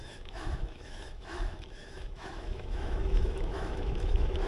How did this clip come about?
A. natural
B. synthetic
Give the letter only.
B